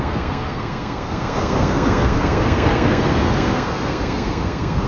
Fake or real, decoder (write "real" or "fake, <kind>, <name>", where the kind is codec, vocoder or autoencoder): fake, codec, SNAC